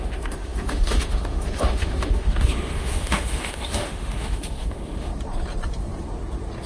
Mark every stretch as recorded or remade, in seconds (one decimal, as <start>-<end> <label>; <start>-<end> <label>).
0.0-5.1 remade; 5.1-6.7 recorded